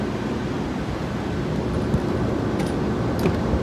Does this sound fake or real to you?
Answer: real